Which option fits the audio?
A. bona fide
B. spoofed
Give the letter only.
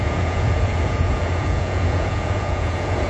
B